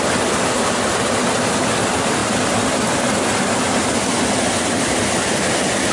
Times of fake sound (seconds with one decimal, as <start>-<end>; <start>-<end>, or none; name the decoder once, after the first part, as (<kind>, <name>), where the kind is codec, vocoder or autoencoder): none